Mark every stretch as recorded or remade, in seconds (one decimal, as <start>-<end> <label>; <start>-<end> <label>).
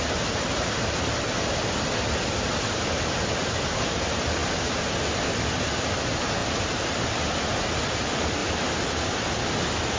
0.0-10.0 recorded